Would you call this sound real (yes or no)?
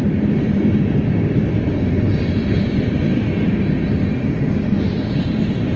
yes